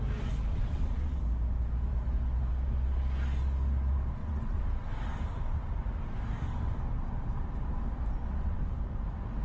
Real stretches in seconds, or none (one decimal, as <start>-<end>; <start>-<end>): 0.0-0.5; 1.2-4.2; 4.9-8.2; 8.7-9.4